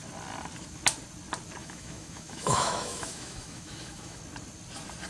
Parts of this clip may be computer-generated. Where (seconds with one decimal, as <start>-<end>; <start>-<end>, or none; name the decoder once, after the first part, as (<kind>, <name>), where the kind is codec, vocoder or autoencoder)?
1.6-4.2 (autoencoder, DAC-VAE)